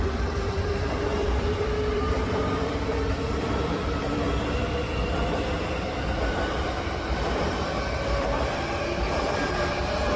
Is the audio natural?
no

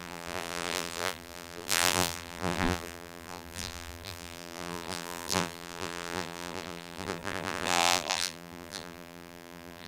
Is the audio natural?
no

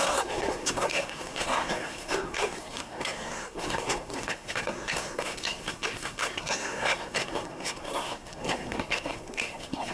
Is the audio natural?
no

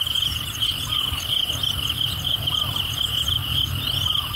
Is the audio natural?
yes